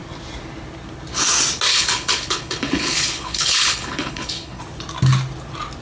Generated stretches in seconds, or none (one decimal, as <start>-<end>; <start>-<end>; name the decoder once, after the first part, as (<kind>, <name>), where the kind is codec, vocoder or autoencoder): 1.7-4.6 (codec, HILCodec)